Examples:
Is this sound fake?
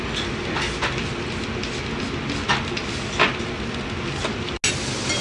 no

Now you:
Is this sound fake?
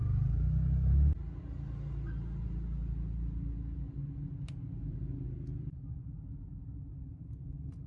no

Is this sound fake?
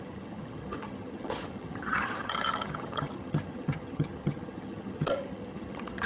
yes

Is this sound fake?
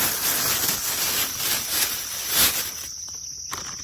no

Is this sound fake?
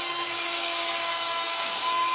yes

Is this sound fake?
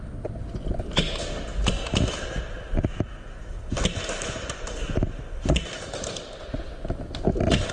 no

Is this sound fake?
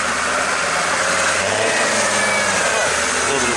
no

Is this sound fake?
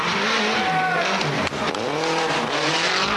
no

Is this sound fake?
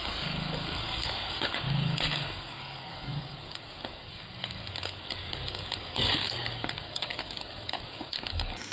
yes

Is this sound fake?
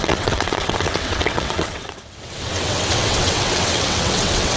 yes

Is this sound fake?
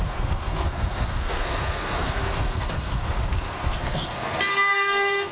yes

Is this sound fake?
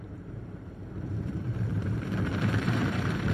yes